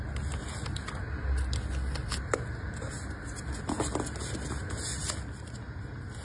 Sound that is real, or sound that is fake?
real